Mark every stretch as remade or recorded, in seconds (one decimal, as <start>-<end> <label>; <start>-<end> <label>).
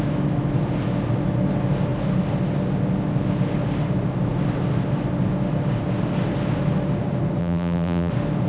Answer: 0.0-7.4 recorded; 7.4-8.1 remade; 8.1-8.5 recorded